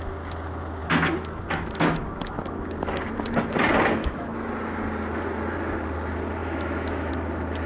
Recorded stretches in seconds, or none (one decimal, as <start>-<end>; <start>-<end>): 0.0-4.0; 4.5-6.4; 7.1-7.7